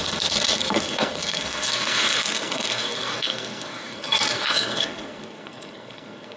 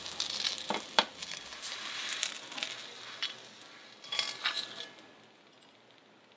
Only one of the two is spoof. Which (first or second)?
first